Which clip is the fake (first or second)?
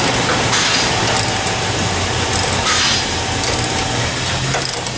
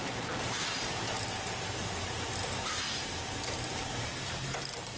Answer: second